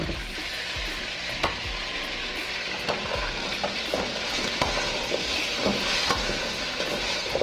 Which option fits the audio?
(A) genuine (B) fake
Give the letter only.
A